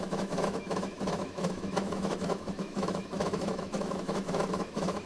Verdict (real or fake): fake